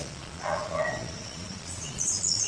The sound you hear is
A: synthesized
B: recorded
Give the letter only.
A